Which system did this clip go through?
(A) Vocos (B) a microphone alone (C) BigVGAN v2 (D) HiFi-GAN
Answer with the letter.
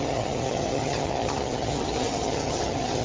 D